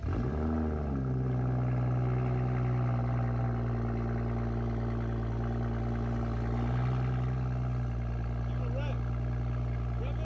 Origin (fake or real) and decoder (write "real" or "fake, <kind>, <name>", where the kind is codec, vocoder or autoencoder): real